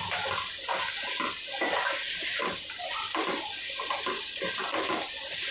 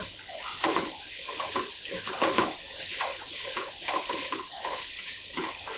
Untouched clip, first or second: first